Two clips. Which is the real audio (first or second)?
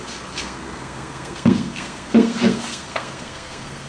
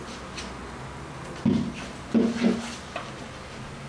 second